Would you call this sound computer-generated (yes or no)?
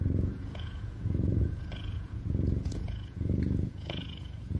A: yes